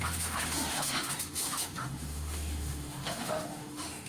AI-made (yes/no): yes